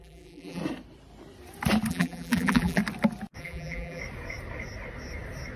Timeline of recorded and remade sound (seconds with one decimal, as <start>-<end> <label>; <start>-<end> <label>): 0.0-0.6 remade; 0.6-1.9 recorded; 1.9-2.8 remade; 2.8-3.4 recorded; 3.4-4.0 remade; 4.0-5.6 recorded